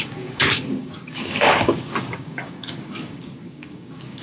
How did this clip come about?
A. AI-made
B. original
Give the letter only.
A